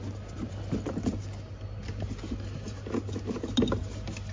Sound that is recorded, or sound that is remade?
recorded